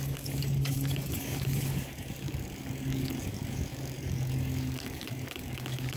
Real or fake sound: fake